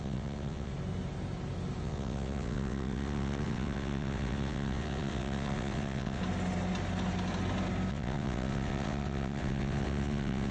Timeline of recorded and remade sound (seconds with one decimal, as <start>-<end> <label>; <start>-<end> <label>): 0.0-0.7 remade; 0.7-1.8 recorded; 1.8-6.2 remade; 6.2-7.9 recorded; 7.9-10.5 remade